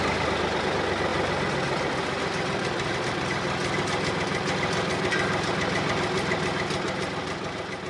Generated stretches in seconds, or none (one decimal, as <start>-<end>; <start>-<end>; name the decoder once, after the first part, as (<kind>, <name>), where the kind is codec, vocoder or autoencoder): none